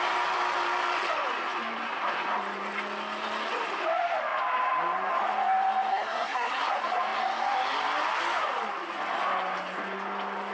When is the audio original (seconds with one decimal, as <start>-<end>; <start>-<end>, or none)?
0.0-5.9; 6.6-10.5